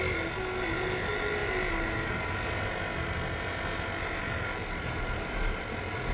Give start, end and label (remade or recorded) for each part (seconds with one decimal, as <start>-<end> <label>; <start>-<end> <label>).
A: 0.0-6.1 recorded